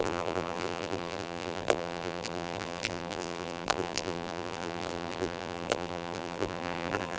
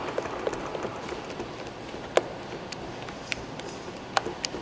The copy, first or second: first